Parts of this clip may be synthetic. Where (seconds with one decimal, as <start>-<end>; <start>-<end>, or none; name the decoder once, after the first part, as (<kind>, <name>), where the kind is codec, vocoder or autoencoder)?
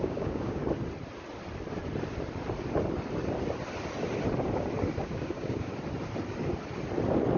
0.0-0.6 (codec, DAC); 5.0-5.7